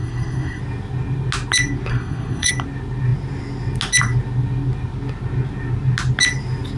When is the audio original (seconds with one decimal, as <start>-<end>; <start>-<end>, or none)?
0.6-1.9; 2.5-6.8